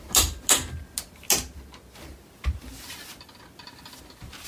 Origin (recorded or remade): recorded